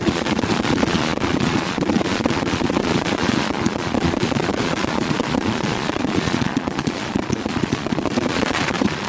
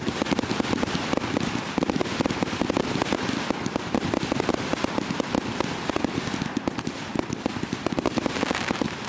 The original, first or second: second